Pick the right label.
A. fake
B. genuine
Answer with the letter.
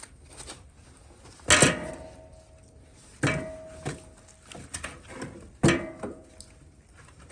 B